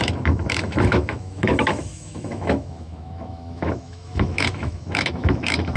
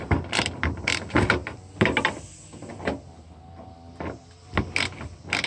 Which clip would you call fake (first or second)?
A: first